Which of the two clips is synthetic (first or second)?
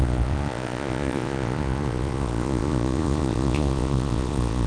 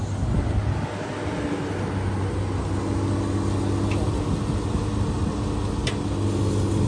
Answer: first